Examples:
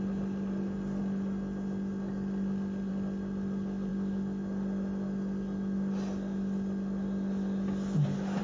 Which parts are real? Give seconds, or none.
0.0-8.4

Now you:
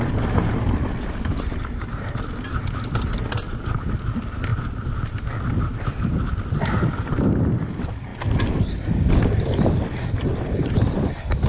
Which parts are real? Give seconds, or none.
0.0-11.5

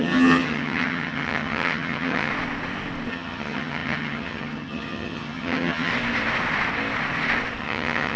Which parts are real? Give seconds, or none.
2.3-3.1; 5.9-7.6